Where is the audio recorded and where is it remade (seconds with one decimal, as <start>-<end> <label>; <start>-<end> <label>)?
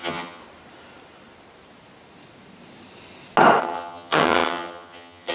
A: 0.0-0.4 remade; 0.4-3.6 recorded; 3.6-5.3 remade